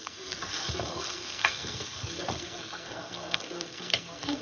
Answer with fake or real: fake